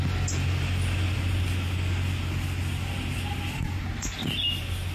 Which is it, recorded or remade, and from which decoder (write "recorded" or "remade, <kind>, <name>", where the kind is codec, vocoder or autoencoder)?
recorded